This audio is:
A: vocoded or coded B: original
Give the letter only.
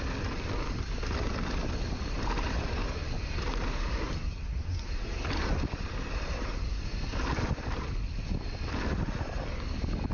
B